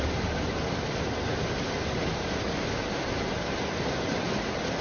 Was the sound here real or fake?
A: real